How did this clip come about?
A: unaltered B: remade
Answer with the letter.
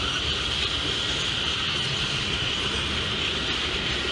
B